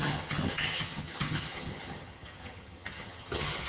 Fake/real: fake